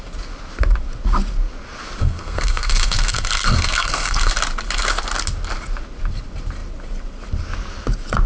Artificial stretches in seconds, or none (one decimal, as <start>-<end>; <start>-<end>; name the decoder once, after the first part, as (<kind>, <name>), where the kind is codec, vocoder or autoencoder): 2.0-4.3 (codec, SNAC)